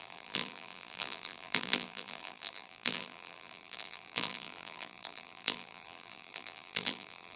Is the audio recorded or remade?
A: remade